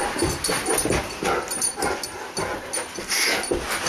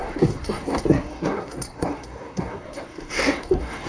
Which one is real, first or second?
first